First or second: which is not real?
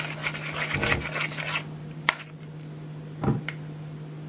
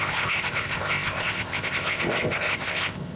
second